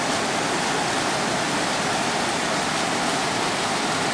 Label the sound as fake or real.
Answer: real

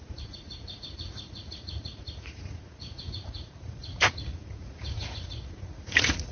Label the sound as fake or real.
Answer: fake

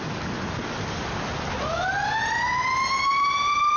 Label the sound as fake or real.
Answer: real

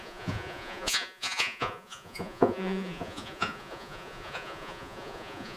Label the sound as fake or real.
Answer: fake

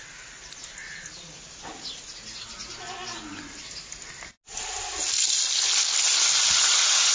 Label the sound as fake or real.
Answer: real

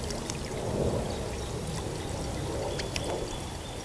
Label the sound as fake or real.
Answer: real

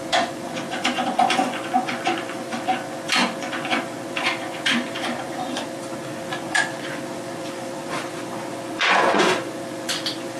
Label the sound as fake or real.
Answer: fake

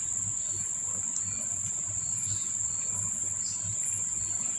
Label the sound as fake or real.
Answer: real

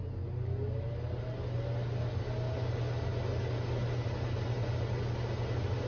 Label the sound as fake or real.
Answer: real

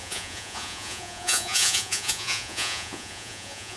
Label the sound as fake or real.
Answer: fake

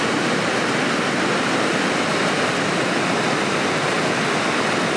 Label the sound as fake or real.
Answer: real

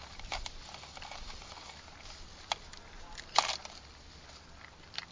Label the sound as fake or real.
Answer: real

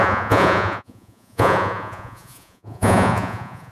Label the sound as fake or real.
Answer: fake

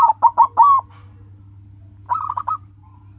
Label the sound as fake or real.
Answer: real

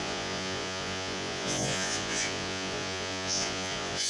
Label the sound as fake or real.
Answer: fake